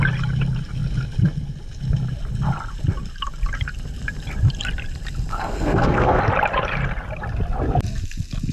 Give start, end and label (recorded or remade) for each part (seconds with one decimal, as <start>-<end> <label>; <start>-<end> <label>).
0.0-5.3 recorded; 5.3-6.2 remade; 6.2-8.5 recorded